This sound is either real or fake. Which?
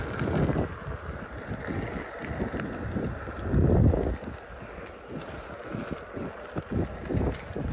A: real